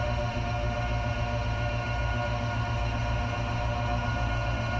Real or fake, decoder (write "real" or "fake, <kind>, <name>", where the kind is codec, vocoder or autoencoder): fake, autoencoder, DAC-VAE